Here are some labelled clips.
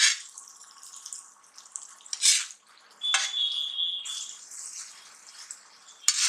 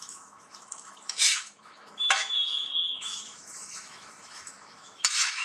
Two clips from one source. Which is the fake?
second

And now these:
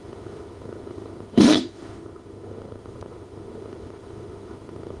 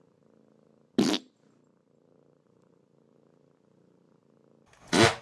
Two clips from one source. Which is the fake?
first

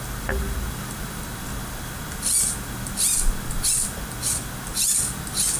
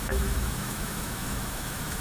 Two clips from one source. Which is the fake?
second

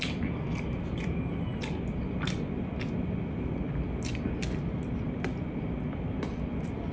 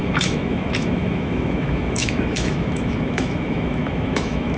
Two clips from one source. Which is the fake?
second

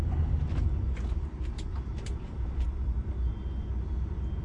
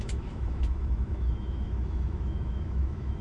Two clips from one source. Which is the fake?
second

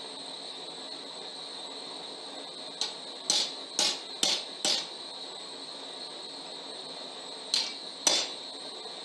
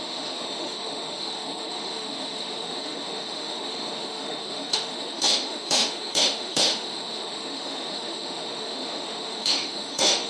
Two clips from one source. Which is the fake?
second